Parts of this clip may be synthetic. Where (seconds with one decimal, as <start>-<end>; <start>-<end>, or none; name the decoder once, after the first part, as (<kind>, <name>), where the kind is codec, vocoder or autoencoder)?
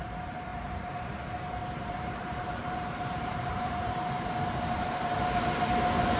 0.5-1.2 (vocoder, BigVGAN v2); 1.6-4.0